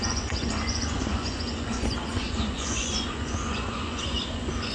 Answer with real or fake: fake